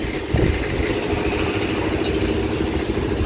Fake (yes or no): no